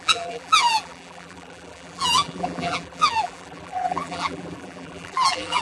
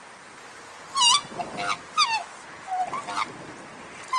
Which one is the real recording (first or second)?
second